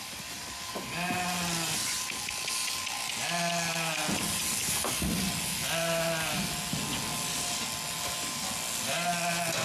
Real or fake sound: real